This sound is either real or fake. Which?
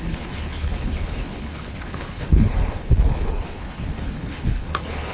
fake